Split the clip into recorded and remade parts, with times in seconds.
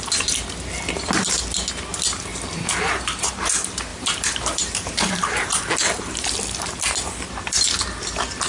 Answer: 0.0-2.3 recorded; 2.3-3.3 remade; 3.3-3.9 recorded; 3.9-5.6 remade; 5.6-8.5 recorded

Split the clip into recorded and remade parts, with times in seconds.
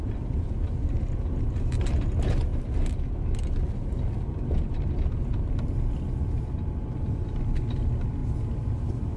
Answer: 0.0-1.1 remade; 1.1-9.2 recorded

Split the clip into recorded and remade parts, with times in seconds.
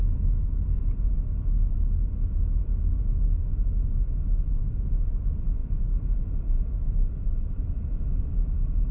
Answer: 0.0-4.6 recorded; 4.6-5.1 remade; 5.1-5.6 recorded; 5.6-7.9 remade; 7.9-8.9 recorded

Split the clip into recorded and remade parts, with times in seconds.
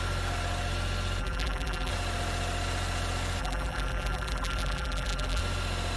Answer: 0.0-1.2 recorded; 1.2-1.9 remade; 1.9-3.4 recorded; 3.4-5.4 remade; 5.4-6.0 recorded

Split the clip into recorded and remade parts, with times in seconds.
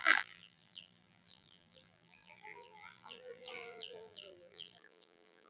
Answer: 0.0-5.5 remade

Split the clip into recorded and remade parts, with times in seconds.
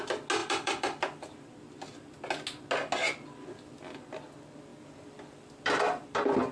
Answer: 0.0-0.4 recorded; 0.4-1.5 remade; 1.5-4.7 recorded; 4.7-6.5 remade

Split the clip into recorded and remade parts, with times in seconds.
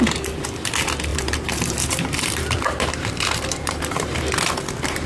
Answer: 0.0-1.1 recorded; 1.1-4.2 remade; 4.2-5.1 recorded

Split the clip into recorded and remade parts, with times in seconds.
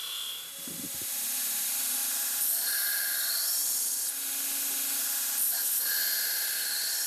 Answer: 0.0-1.4 recorded; 1.4-2.0 remade; 2.0-2.8 recorded; 2.8-3.6 remade; 3.6-7.1 recorded